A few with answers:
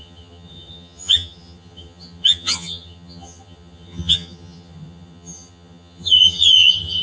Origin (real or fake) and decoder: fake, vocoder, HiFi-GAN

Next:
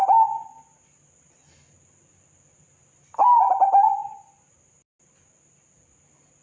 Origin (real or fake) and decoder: real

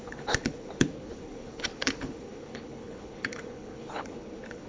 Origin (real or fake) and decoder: fake, codec, HILCodec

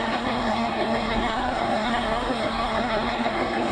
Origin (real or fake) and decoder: fake, codec, SNAC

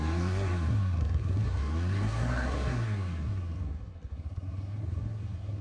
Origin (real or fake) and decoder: fake, codec, SNAC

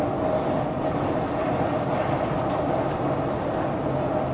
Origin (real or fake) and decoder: real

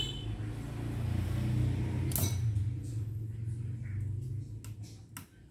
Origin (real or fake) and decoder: real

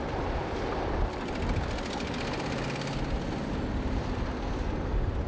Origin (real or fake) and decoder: real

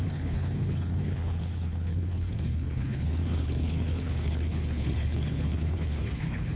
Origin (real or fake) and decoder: fake, codec, HILCodec